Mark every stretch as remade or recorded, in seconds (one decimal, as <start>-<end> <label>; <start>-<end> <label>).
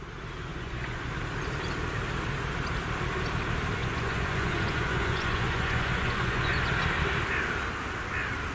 0.0-0.5 recorded; 0.5-1.1 remade; 1.1-3.8 recorded; 3.8-6.8 remade; 6.8-8.5 recorded